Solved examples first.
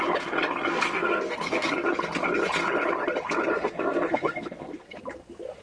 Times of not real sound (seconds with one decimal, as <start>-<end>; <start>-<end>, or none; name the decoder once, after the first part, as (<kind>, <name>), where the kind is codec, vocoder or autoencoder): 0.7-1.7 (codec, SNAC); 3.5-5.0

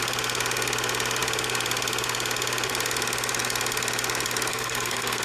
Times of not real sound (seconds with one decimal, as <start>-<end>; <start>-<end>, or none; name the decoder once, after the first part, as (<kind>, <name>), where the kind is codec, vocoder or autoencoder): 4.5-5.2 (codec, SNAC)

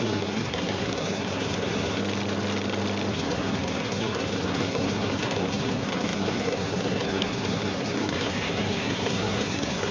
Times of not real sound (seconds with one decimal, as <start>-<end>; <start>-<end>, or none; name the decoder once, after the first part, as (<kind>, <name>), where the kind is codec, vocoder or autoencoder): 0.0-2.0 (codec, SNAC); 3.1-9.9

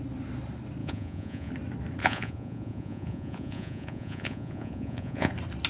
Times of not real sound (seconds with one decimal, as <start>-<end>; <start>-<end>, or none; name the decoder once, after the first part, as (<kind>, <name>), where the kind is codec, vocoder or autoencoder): 0.8-1.5 (vocoder, Vocos); 2.0-5.3

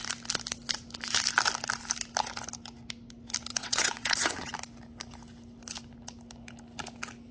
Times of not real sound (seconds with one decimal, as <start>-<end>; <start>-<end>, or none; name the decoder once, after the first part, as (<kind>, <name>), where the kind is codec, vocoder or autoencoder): 3.5-4.5 (vocoder, WaveNeXt)